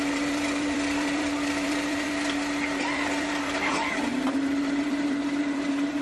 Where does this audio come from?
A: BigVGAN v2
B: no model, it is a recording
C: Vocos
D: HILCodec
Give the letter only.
A